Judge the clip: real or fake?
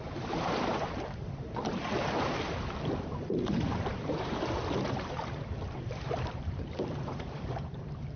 fake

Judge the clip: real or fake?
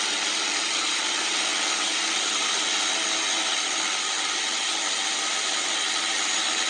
real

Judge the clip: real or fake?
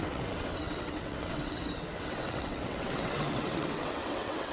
fake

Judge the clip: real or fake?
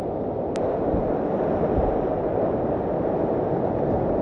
real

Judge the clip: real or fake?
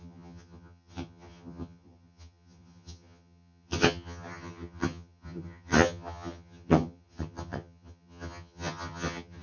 fake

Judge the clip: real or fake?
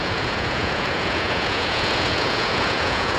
fake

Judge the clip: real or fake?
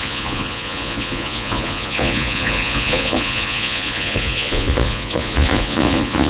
fake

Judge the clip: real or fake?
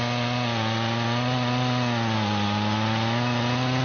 real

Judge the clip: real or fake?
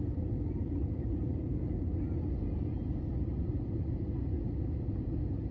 real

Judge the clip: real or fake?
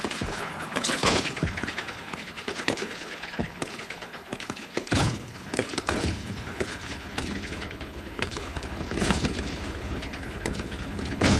fake